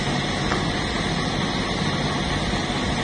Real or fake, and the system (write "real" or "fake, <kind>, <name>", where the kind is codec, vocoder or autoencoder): real